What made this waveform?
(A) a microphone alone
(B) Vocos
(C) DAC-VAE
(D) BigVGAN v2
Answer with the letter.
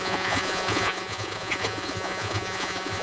B